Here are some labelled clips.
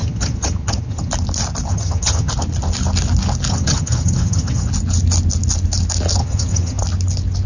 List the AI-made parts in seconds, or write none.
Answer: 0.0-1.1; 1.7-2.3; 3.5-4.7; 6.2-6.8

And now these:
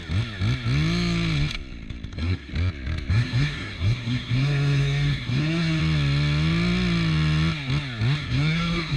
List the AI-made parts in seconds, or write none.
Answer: 2.1-2.5; 3.1-5.8; 8.2-9.0

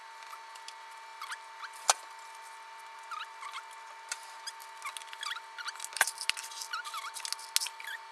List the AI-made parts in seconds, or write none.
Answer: none

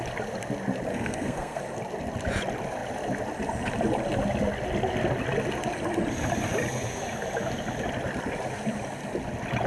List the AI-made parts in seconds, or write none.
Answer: 0.9-1.6

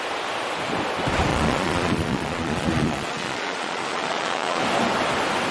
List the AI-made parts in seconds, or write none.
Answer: 1.3-4.6

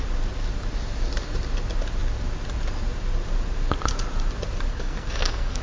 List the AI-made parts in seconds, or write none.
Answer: 4.7-5.6

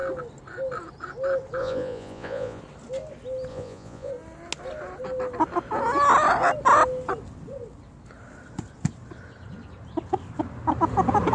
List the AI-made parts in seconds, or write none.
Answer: 1.6-2.6; 3.5-4.1

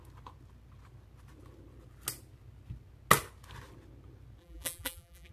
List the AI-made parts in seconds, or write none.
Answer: 4.4-5.3